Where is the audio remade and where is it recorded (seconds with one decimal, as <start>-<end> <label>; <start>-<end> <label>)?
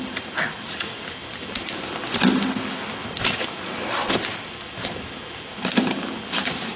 0.0-6.8 recorded